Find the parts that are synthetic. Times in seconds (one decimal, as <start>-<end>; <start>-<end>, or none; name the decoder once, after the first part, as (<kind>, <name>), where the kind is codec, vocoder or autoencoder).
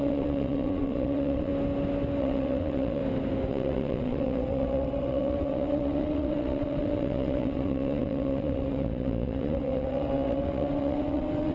0.0-1.5 (vocoder, WaveNeXt); 2.2-3.0; 3.5-11.5